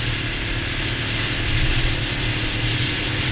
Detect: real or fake real